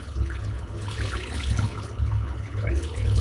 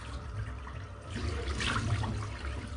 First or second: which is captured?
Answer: second